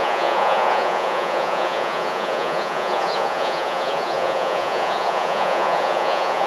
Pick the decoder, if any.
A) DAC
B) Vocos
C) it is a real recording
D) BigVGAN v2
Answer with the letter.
B